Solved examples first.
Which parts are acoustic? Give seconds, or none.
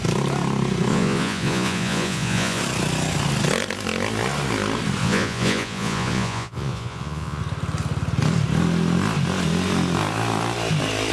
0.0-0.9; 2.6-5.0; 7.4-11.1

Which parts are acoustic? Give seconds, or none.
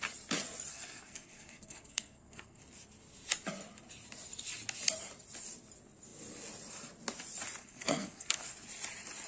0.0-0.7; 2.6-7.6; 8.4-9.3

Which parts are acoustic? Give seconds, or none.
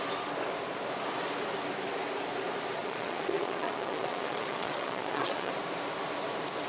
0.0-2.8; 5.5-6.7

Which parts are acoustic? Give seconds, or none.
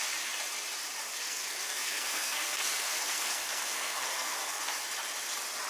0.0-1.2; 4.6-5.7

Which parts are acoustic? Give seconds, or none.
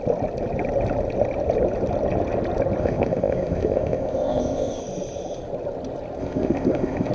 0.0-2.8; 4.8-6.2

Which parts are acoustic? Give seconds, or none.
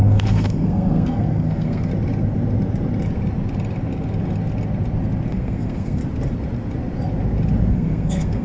1.9-5.3; 6.0-7.7